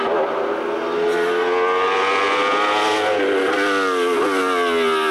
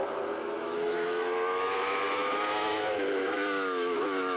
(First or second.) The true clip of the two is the first